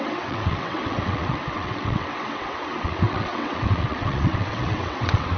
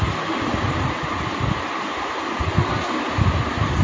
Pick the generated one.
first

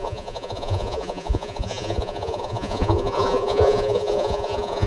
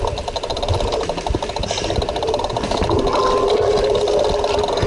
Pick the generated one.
first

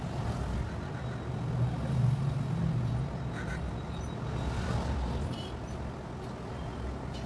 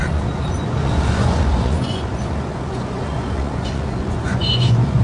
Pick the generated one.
second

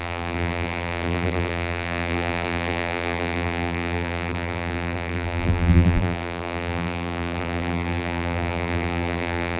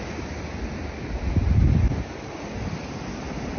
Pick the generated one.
first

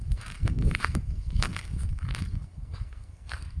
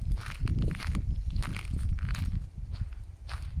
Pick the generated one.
first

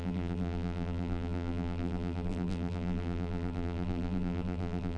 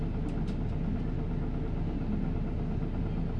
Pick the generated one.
first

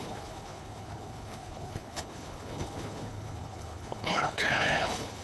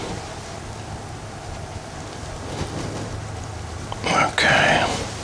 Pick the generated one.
first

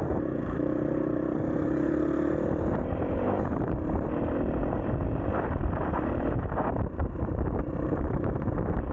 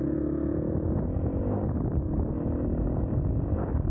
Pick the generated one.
first